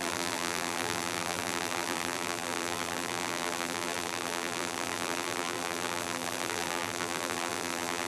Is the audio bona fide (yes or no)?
no